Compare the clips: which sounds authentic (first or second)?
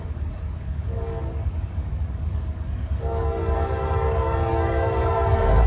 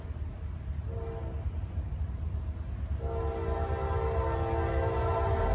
second